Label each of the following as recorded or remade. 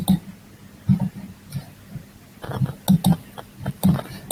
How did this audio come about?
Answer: recorded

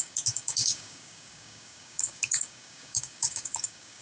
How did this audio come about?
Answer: remade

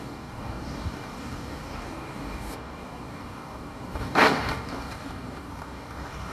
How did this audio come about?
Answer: remade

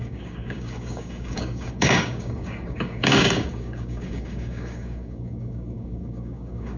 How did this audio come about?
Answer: remade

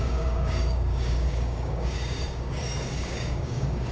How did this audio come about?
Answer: remade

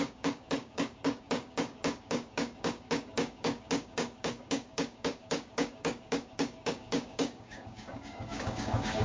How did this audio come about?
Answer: remade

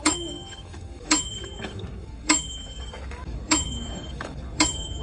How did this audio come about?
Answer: remade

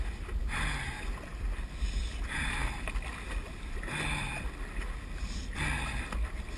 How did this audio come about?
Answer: recorded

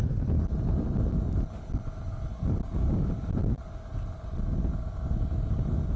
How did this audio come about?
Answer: recorded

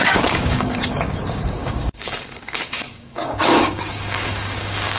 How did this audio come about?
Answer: remade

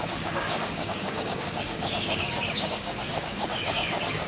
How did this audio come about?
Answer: remade